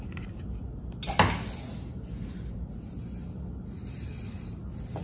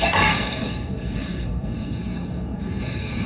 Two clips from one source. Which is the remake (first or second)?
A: second